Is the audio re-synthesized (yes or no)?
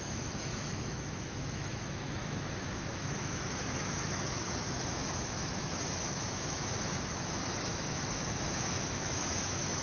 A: yes